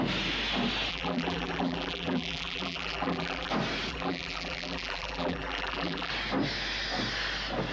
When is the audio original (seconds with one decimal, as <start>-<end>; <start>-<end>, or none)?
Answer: 0.0-0.9; 3.5-3.9; 6.1-7.7